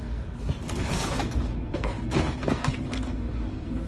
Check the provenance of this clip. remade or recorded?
remade